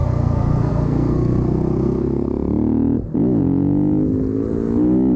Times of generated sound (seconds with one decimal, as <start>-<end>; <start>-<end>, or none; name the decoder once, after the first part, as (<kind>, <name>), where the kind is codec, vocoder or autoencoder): 0.0-2.3 (codec, SNAC)